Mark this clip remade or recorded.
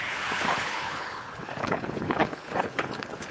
remade